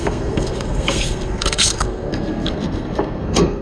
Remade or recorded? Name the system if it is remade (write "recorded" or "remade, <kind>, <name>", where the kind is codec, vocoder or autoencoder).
remade, codec, SNAC